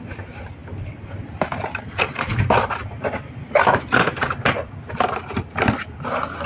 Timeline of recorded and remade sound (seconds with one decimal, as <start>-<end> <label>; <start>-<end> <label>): 0.0-6.5 recorded